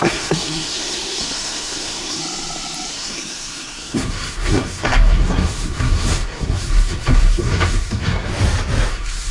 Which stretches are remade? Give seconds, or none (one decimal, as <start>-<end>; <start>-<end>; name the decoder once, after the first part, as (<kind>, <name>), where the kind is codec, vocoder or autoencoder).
0.0-2.2 (codec, SNAC); 2.9-8.3; 8.9-9.3